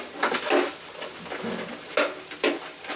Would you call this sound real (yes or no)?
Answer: yes